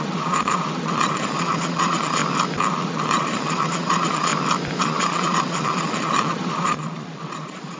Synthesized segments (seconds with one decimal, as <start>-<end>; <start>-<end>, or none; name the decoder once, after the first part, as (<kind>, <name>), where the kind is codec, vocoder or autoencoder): 0.0-2.2 (vocoder, Vocos); 2.9-4.3; 4.8-7.8